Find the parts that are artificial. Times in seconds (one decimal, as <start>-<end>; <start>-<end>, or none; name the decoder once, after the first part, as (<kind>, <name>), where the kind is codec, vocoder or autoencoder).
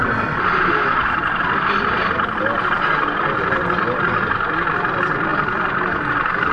none